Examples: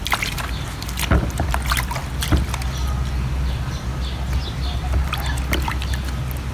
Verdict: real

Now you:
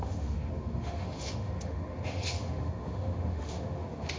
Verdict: fake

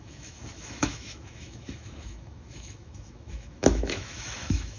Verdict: fake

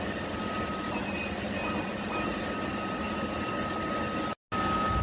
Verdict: real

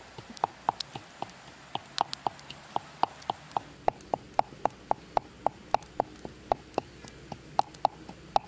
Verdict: real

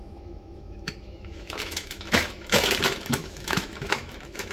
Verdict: fake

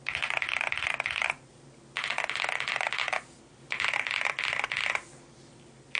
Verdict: real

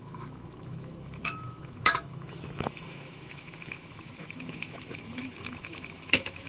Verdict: fake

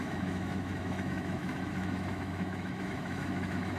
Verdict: fake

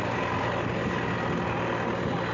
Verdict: real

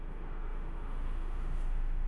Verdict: fake